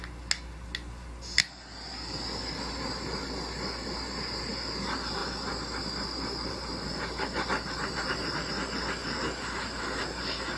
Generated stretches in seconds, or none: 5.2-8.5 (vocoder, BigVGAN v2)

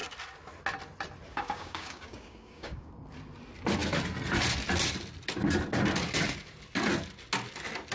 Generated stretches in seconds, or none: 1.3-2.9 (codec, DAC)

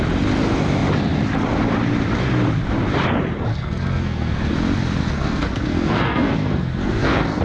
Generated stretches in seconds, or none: 3.5-4.5 (codec, SNAC); 5.0-7.4